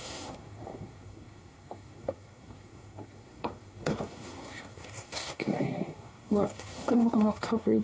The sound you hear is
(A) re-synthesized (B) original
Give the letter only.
A